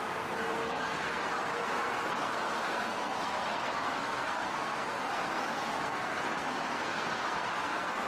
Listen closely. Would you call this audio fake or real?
fake